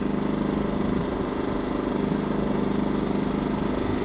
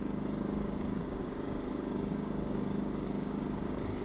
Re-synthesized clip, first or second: second